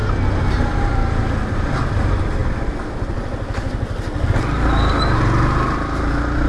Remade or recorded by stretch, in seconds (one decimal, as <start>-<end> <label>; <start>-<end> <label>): 0.0-6.5 recorded